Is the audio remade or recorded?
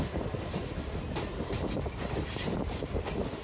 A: recorded